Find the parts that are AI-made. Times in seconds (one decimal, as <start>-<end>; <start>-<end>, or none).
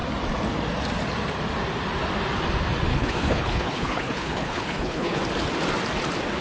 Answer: 2.9-5.2